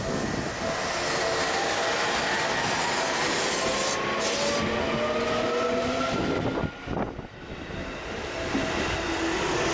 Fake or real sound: real